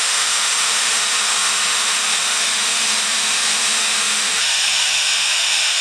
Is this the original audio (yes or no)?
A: no